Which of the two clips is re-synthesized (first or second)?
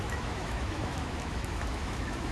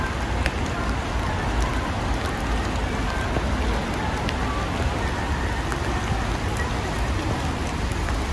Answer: first